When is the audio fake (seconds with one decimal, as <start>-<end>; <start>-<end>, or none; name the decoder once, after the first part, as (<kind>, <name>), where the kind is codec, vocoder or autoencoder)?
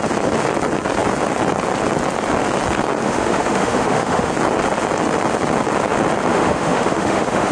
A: 3.0-4.3 (autoencoder, DAC-VAE); 6.3-7.5